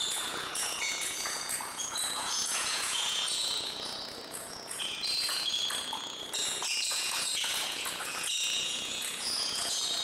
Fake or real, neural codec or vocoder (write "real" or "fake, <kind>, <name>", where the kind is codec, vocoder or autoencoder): fake, vocoder, Vocos